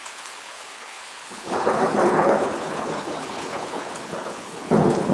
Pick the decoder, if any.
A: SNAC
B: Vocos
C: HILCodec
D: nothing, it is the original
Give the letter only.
C